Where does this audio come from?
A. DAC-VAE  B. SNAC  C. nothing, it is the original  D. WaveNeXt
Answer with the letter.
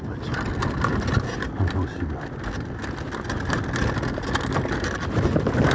C